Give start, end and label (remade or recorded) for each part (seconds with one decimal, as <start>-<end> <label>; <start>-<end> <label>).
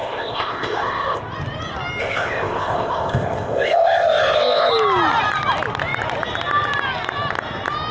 0.0-1.2 remade; 1.2-2.0 recorded; 2.0-4.7 remade; 4.7-7.9 recorded